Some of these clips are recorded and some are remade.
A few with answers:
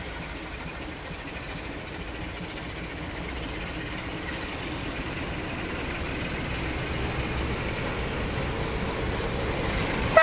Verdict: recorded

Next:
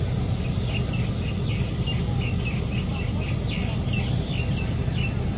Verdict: recorded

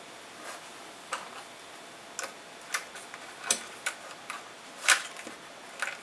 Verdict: recorded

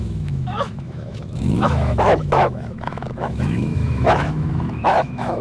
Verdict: remade